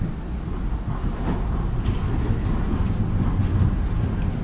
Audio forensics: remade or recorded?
recorded